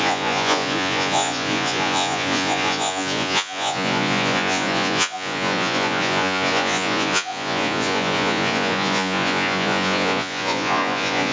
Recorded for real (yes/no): no